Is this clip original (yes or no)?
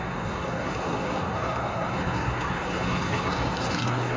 no